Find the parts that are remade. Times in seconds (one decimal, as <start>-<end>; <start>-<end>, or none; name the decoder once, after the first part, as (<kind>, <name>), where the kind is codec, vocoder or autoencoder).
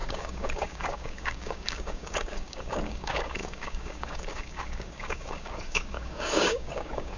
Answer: 0.0-7.2 (codec, DAC)